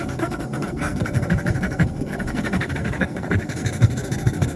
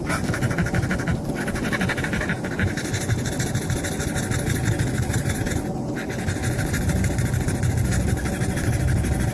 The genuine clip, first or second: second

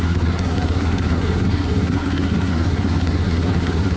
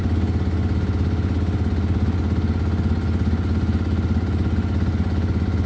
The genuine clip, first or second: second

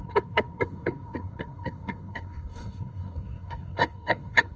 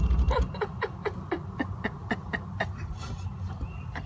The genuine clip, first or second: second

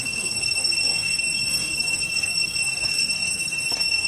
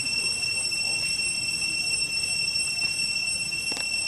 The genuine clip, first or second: second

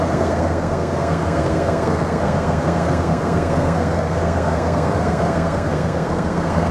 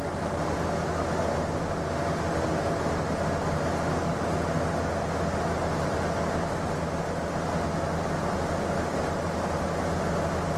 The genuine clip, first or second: second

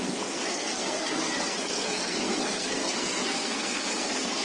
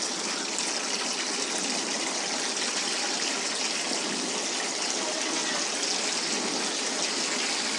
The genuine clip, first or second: second